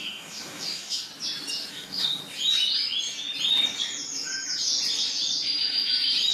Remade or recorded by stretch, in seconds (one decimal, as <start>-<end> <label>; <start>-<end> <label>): 0.0-1.1 remade; 1.1-1.7 recorded; 1.7-2.2 remade; 2.2-6.3 recorded